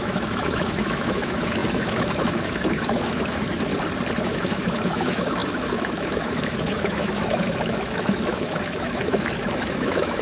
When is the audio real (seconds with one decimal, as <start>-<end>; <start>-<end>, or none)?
3.7-4.2